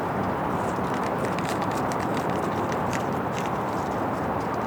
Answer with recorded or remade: remade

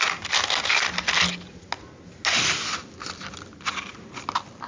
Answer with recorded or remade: recorded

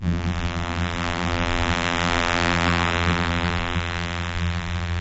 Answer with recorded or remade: remade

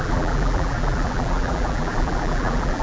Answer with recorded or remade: remade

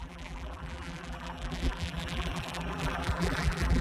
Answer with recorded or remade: remade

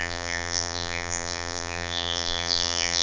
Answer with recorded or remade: remade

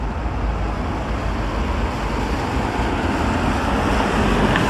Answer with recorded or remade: recorded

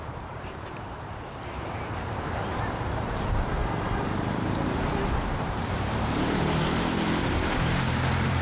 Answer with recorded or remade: remade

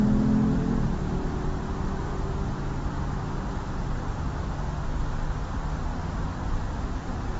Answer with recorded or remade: recorded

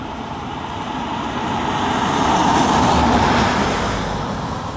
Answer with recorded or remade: remade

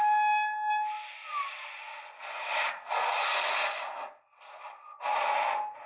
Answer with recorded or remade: recorded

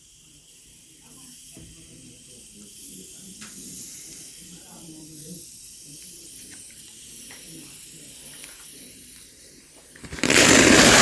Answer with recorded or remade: remade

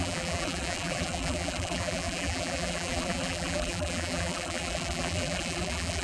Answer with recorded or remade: remade